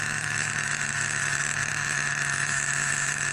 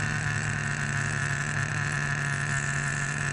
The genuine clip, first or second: second